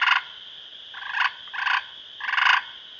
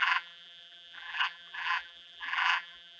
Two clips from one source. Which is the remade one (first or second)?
second